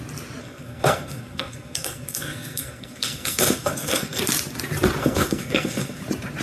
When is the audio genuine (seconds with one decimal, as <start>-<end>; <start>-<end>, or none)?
0.0-0.4; 4.2-5.0; 6.0-6.4